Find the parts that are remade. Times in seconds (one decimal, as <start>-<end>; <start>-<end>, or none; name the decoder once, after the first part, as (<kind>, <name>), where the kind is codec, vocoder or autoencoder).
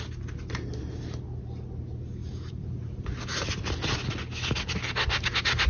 2.2-3.0 (vocoder, BigVGAN v2)